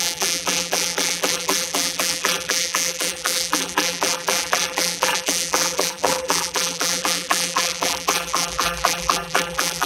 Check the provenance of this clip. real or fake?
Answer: fake